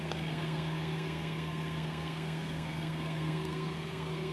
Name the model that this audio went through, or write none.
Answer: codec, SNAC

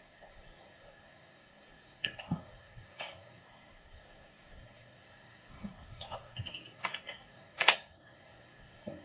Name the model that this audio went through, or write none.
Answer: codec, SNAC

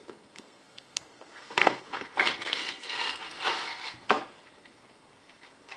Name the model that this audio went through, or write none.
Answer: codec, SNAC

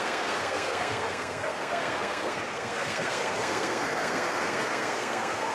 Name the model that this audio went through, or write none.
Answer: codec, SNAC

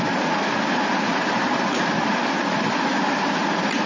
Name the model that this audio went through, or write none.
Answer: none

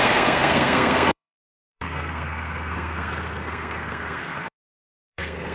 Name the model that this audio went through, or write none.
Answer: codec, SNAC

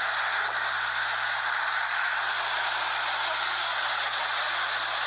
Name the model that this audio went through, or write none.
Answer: none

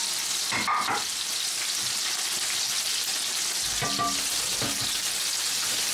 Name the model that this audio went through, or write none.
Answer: none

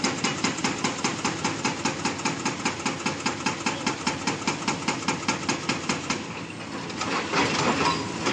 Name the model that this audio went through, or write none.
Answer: none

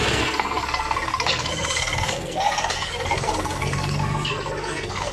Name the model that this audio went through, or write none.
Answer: codec, SNAC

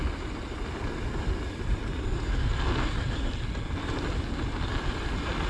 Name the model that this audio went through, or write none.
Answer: none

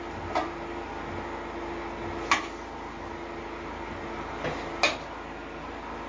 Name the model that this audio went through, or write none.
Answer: none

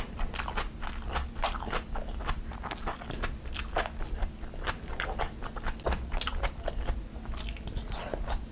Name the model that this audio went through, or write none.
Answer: none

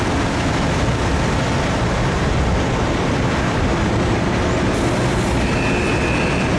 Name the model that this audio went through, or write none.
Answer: none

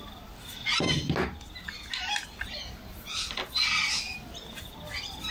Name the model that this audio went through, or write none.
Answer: none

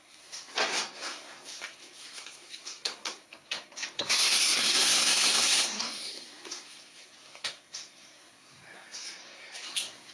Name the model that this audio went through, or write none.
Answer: codec, SNAC